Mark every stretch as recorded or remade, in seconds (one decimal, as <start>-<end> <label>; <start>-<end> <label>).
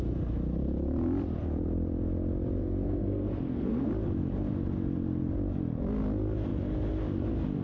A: 0.0-2.6 recorded; 2.6-3.9 remade; 3.9-7.6 recorded